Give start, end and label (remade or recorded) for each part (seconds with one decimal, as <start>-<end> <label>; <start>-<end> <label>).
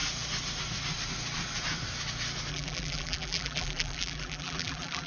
0.0-2.5 recorded; 2.5-5.1 remade